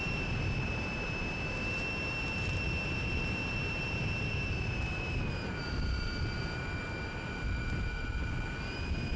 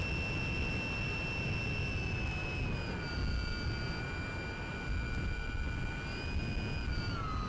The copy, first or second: first